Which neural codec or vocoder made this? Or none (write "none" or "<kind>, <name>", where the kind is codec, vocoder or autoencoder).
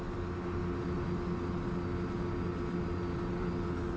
none